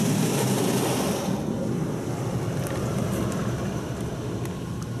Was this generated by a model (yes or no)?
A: no